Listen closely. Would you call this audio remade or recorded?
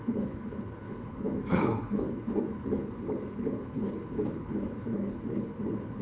remade